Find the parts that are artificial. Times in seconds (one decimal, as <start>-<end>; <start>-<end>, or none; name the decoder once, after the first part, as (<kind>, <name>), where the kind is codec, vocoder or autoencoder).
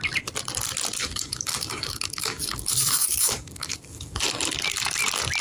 1.0-4.2 (codec, DAC)